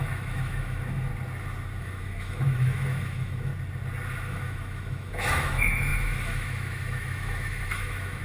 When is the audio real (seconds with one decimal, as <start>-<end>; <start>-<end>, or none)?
1.1-1.8; 3.5-4.2